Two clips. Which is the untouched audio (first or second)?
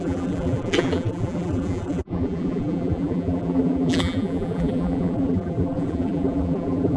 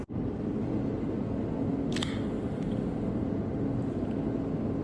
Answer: second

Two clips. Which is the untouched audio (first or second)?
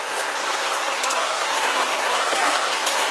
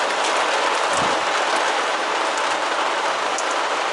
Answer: second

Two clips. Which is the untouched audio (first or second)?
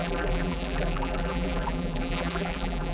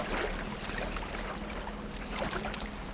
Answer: second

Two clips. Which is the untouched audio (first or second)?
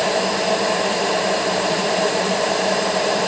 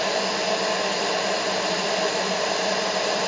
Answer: second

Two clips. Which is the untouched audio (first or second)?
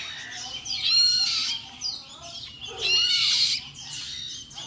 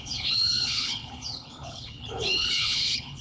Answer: first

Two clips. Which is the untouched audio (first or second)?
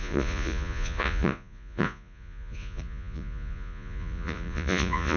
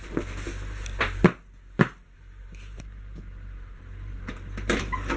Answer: second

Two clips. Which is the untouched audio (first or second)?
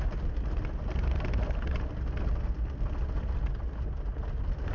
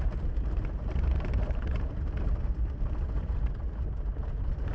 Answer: first